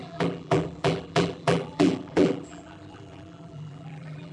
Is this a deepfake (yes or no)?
yes